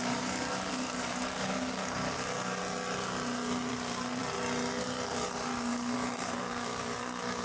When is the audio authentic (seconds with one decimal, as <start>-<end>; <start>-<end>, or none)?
2.6-3.7; 4.2-4.8